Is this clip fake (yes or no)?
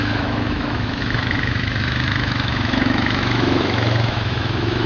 yes